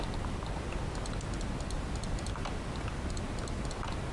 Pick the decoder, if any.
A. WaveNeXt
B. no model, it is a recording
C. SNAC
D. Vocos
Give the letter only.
B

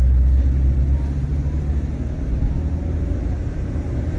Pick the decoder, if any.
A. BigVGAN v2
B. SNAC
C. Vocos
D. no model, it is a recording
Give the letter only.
D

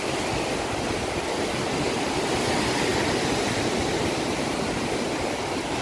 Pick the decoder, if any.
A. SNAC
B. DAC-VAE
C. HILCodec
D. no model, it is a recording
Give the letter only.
D